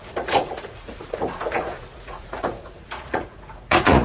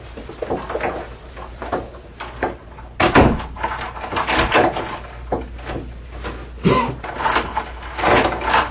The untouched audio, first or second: second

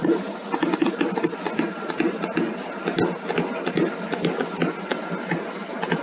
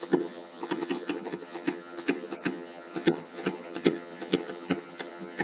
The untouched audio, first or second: first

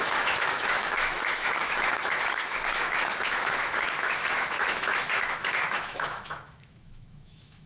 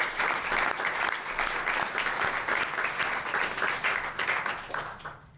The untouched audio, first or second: second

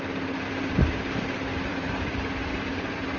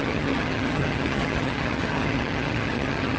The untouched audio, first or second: first